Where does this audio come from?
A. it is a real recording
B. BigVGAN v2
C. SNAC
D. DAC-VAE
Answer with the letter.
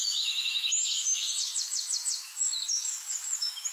D